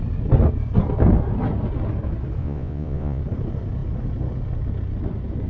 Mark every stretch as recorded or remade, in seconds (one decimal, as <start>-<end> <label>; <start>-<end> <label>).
0.0-2.4 recorded; 2.4-3.2 remade; 3.2-5.5 recorded